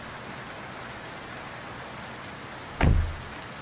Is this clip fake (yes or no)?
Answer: no